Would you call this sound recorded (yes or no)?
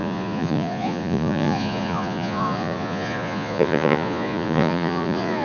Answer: no